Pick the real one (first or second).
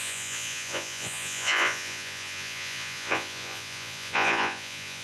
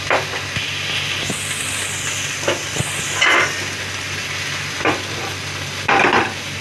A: second